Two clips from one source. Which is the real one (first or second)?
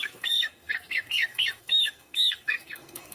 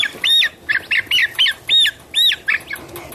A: second